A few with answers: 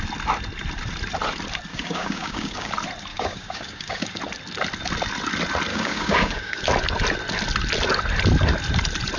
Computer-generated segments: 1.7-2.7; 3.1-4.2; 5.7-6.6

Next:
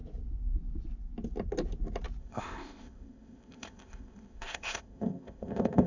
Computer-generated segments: 2.2-5.9

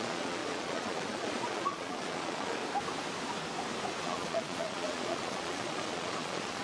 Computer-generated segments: 0.0-2.6; 4.0-6.6